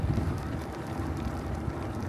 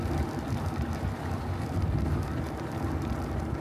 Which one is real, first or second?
second